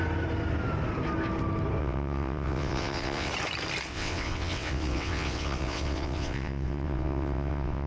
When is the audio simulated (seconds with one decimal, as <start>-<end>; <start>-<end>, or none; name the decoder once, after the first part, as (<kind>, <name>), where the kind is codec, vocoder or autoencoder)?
1.8-3.3 (vocoder, WaveNeXt); 3.9-7.9